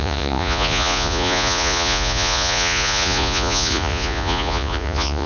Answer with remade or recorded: remade